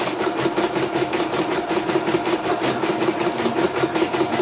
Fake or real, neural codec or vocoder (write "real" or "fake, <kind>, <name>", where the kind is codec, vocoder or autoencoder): real